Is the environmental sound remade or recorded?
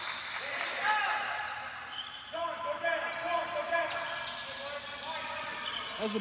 recorded